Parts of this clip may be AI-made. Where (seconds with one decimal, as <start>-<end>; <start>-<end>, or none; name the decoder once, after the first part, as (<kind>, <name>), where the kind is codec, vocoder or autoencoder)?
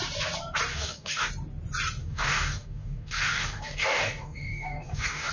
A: 0.7-1.3 (codec, DAC); 2.0-5.3